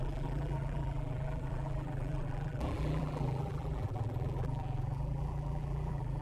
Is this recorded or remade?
remade